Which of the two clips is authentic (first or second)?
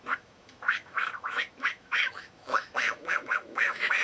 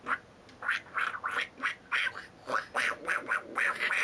second